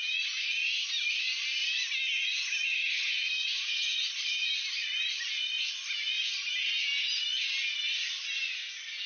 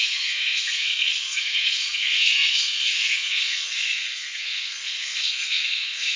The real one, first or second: first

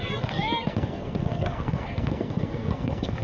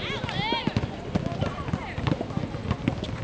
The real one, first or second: second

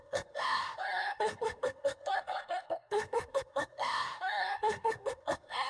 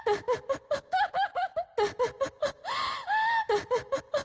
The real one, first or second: second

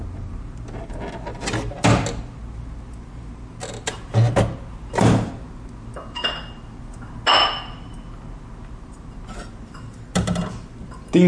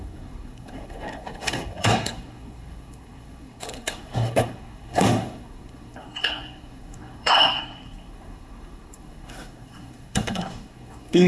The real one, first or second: first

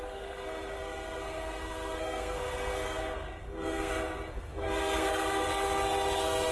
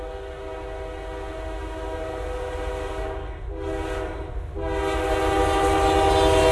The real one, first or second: second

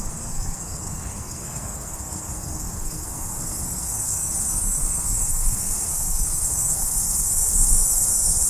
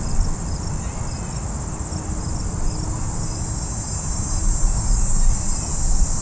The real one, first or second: second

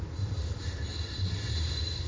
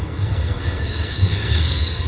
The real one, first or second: first